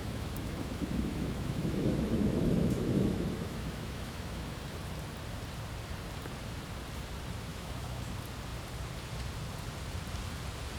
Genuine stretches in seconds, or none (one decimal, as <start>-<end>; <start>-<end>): 4.7-7.5; 8.1-10.8

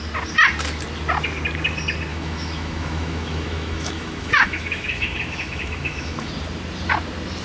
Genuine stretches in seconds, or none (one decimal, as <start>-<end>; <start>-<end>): 0.0-2.1; 6.3-7.4

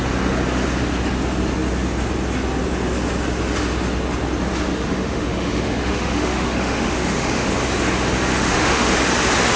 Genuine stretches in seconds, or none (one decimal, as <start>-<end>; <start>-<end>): 0.0-4.9; 7.5-8.3; 8.9-9.6

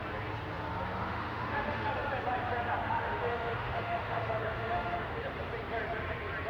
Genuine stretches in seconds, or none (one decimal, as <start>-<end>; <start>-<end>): 0.0-1.1; 1.9-2.8; 5.2-6.5

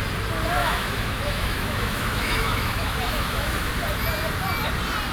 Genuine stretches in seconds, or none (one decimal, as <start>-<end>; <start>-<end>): 0.0-0.6; 3.7-5.1

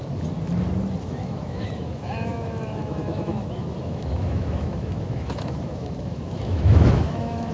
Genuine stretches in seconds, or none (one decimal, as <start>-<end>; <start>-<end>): 0.0-1.0

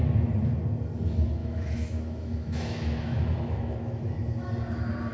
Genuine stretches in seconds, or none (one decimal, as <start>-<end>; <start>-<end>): 0.0-1.4; 4.5-5.1

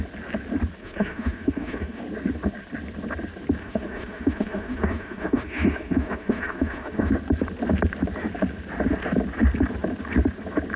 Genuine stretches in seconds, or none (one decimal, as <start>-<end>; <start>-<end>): 0.0-0.8; 2.0-3.6; 7.1-10.8